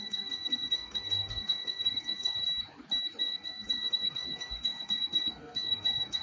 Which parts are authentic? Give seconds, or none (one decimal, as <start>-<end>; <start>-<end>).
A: 2.4-3.2

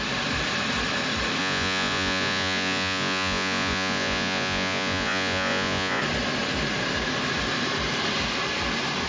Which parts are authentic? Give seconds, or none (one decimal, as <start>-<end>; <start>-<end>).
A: 0.0-1.4; 6.0-9.1

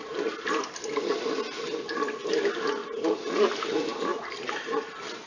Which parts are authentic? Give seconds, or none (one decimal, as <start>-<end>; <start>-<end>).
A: 0.0-5.3

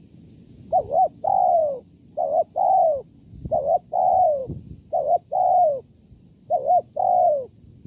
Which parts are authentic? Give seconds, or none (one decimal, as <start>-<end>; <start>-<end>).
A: 0.0-7.9